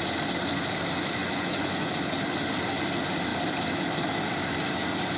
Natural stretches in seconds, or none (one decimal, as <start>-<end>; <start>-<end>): 0.0-1.2; 2.0-5.2